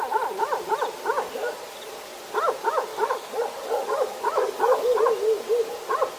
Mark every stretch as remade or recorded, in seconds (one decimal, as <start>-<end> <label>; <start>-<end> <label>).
0.0-2.9 recorded; 2.9-5.0 remade; 5.0-6.2 recorded